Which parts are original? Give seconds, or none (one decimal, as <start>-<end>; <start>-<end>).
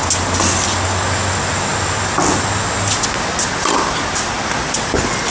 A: 0.0-5.3